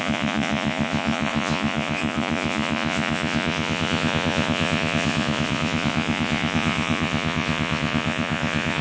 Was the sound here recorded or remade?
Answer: remade